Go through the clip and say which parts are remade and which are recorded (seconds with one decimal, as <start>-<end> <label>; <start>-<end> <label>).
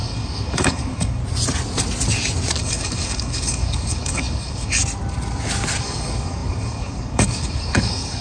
0.0-1.2 remade; 1.2-2.6 recorded; 2.6-4.8 remade; 4.8-5.8 recorded; 5.8-8.2 remade